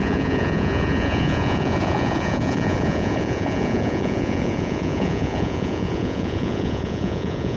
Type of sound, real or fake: fake